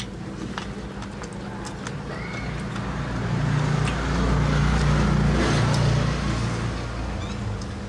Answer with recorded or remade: recorded